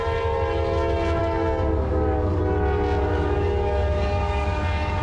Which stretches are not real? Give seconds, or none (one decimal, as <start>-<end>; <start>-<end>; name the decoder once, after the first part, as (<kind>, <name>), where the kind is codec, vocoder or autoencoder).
1.2-2.4 (codec, DAC); 3.1-5.0